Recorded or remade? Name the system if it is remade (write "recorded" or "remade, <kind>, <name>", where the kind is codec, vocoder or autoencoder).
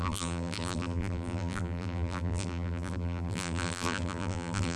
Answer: remade, vocoder, BigVGAN v2